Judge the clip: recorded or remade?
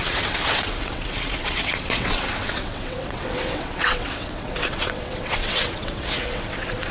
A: remade